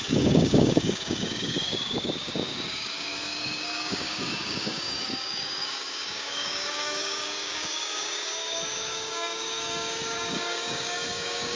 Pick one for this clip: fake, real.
fake